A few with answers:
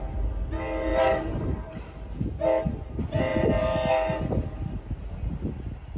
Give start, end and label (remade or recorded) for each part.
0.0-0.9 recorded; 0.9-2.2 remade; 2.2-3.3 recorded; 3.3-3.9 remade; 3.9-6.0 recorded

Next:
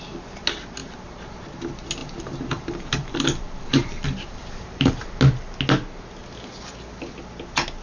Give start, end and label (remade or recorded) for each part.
0.0-0.8 recorded; 0.8-1.4 remade; 1.4-2.0 recorded; 2.0-5.2 remade; 5.2-7.8 recorded

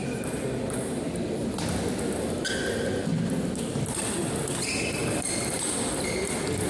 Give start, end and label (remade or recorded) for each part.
0.0-6.7 recorded

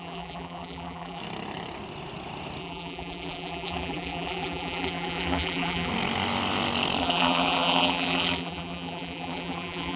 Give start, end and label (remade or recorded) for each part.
0.0-1.2 remade; 1.2-2.6 recorded; 2.6-5.9 remade; 5.9-7.0 recorded; 7.0-10.0 remade

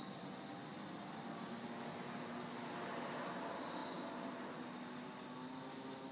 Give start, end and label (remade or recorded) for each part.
0.0-6.1 recorded

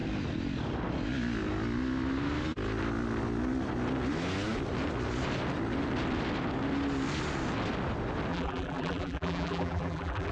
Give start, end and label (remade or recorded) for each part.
0.0-8.3 recorded; 8.3-10.3 remade

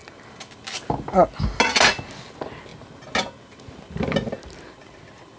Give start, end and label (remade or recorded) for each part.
0.0-5.4 recorded